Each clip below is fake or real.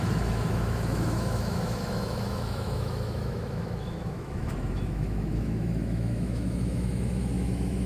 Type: fake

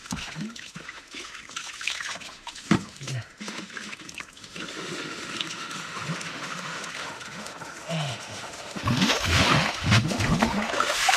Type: fake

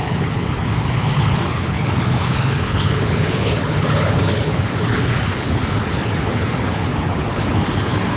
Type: fake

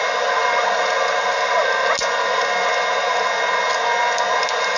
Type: real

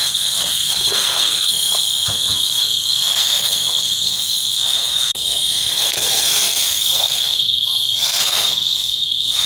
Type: fake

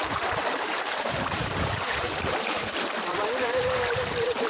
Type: fake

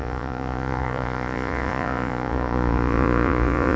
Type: fake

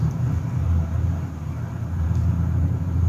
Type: fake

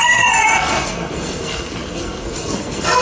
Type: fake